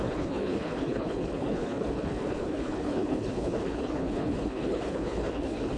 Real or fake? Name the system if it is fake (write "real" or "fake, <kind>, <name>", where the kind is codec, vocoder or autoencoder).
fake, codec, HILCodec